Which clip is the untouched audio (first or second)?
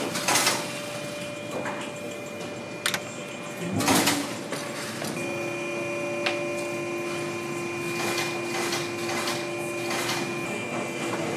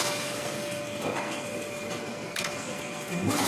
first